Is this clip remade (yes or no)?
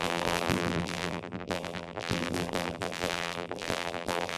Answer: yes